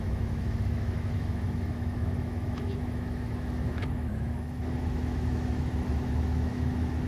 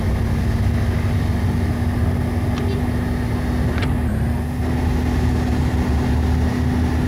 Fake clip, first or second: first